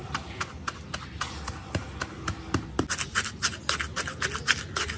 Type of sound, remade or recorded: recorded